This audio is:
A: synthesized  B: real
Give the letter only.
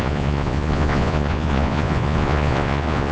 A